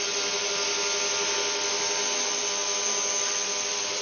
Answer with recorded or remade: recorded